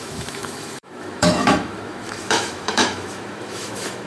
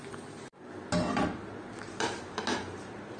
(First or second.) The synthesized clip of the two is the first